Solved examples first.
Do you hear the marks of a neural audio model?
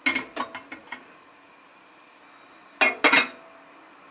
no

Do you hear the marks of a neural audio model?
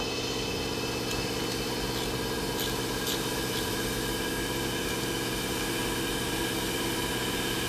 no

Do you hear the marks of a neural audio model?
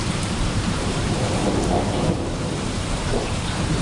yes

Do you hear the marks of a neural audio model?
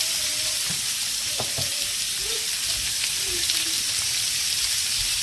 yes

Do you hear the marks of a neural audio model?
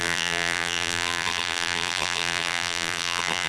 yes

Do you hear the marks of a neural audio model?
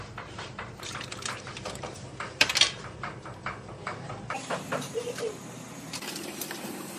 yes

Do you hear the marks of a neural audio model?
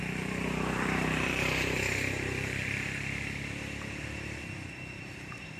yes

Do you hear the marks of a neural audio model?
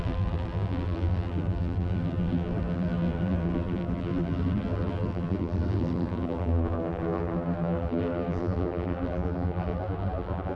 yes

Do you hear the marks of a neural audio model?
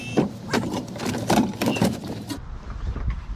yes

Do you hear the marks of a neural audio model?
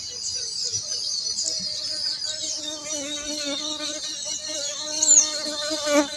no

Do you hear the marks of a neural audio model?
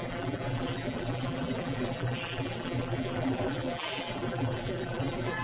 yes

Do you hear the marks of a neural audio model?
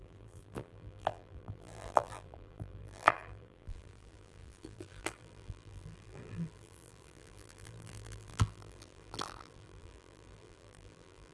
yes